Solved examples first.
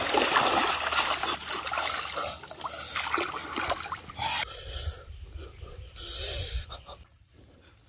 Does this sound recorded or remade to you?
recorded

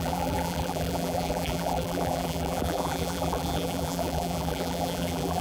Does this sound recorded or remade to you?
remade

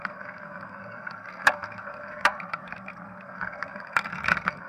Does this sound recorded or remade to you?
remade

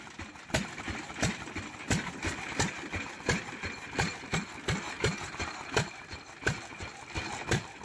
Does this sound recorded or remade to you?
recorded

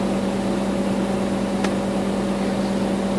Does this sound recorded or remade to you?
recorded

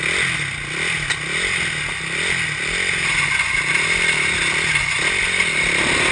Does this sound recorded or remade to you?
recorded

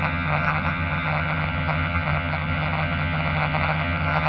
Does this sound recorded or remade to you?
remade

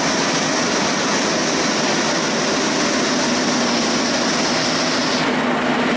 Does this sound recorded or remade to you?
recorded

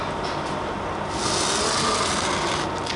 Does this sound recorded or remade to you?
recorded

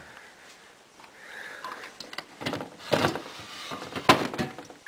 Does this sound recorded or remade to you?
recorded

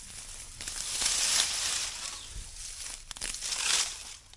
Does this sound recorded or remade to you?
recorded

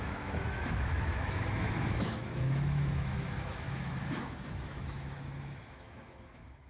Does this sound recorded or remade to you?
remade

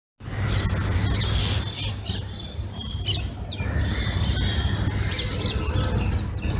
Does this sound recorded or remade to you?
recorded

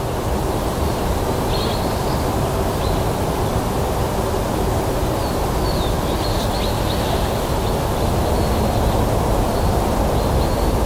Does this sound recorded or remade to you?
recorded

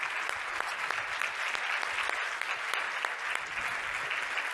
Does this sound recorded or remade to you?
recorded